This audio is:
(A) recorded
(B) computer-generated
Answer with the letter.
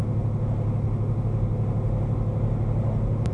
A